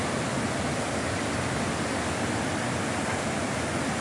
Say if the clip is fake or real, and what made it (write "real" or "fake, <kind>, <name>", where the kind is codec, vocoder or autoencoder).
real